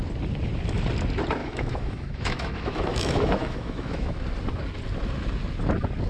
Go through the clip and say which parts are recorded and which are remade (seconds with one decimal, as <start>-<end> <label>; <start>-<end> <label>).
0.0-1.4 recorded; 1.4-4.2 remade; 4.2-6.1 recorded